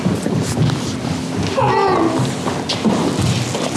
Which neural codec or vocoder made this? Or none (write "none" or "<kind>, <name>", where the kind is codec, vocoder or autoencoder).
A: none